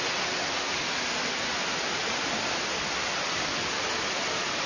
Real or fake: real